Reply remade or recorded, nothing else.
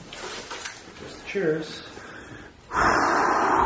recorded